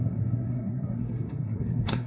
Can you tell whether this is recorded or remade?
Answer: remade